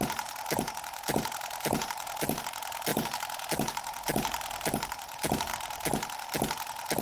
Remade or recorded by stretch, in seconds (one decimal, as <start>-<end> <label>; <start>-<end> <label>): 0.0-5.5 remade; 5.5-7.0 recorded